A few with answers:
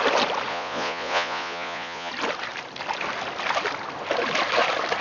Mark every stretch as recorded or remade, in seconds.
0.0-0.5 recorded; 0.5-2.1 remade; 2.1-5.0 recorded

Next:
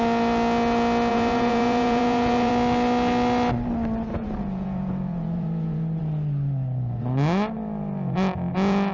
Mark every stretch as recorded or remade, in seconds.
0.0-1.1 recorded; 1.1-2.5 remade; 2.5-4.1 recorded; 4.1-6.0 remade; 6.0-8.9 recorded

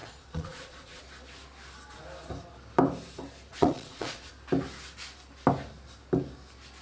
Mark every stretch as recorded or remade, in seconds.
0.0-1.0 remade; 1.0-3.5 recorded; 3.5-4.3 remade; 4.3-6.8 recorded

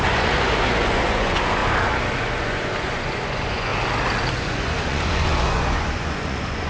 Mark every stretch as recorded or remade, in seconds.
0.0-1.6 remade; 1.6-2.2 recorded; 2.2-3.7 remade; 3.7-4.3 recorded; 4.3-6.7 remade

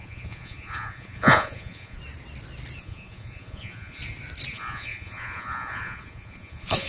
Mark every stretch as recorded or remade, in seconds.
0.0-2.0 remade; 2.0-2.8 recorded; 2.8-4.0 remade; 4.0-4.5 recorded; 4.5-6.9 remade

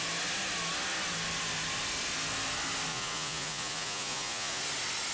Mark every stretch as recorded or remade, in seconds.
0.0-2.9 recorded; 2.9-4.6 remade; 4.6-5.1 recorded